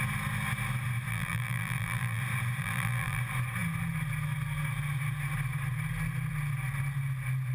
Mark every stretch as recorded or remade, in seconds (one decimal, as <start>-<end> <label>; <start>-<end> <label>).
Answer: 0.0-1.1 recorded; 1.1-2.2 remade; 2.2-2.6 recorded; 2.6-3.2 remade; 3.2-7.5 recorded